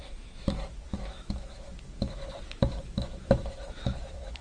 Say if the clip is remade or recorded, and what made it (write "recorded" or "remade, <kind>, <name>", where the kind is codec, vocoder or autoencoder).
remade, autoencoder, DAC-VAE